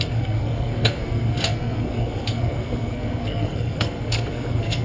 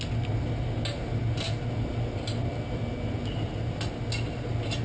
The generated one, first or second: first